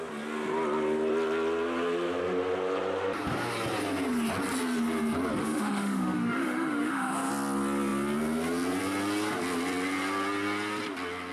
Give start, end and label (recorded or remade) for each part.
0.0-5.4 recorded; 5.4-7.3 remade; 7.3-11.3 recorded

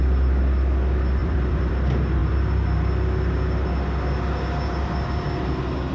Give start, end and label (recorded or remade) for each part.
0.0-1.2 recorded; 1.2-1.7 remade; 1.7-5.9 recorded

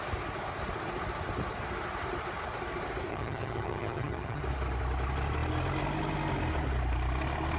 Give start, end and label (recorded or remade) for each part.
0.0-3.1 recorded; 3.1-4.4 remade; 4.4-7.6 recorded